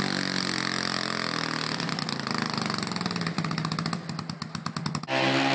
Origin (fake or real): real